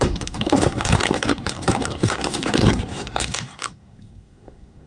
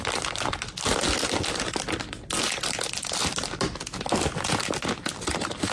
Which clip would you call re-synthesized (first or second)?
first